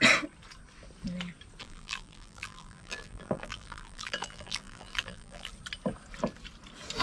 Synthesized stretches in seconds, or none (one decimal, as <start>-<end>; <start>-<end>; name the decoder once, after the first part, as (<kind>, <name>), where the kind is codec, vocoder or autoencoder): 1.6-5.5 (vocoder, BigVGAN v2)